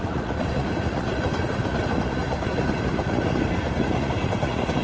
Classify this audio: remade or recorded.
remade